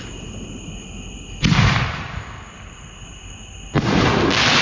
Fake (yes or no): no